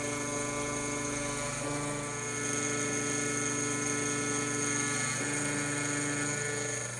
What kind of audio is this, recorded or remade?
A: recorded